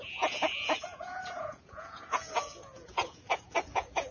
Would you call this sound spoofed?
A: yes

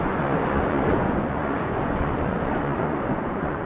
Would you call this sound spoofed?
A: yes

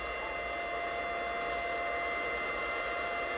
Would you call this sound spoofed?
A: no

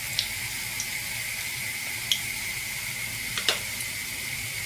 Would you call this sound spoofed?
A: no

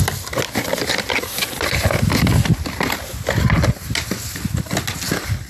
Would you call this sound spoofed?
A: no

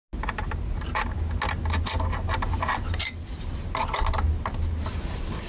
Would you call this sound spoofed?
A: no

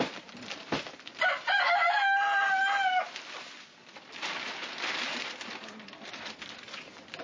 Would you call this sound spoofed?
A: no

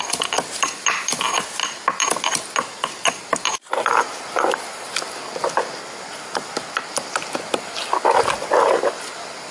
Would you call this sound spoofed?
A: no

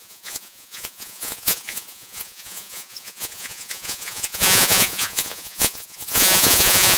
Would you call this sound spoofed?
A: yes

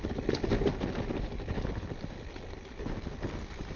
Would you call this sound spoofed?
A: no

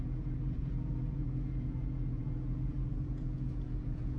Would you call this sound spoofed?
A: yes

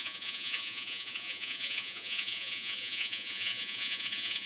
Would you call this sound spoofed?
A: yes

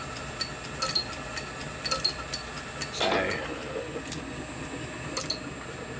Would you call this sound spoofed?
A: no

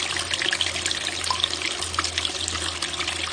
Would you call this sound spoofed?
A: no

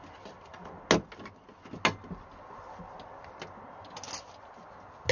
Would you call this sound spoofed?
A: no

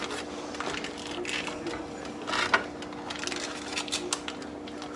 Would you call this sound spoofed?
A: no